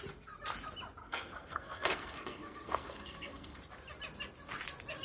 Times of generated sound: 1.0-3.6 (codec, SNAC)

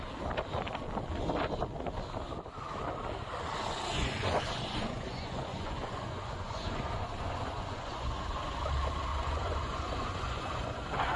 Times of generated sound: 3.9-8.6 (vocoder, Vocos); 9.1-11.2

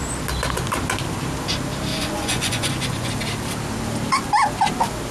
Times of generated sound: 1.9-3.1 (vocoder, Vocos)

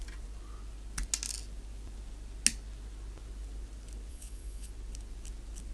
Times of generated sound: 4.1-4.7 (vocoder, Vocos)

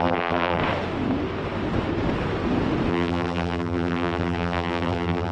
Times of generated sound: 0.0-0.6 (vocoder, BigVGAN v2); 2.9-5.3

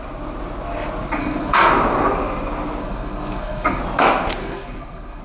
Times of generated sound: 1.2-1.7 (codec, SNAC); 2.8-3.8; 4.4-5.2